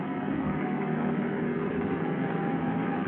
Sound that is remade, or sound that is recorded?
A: remade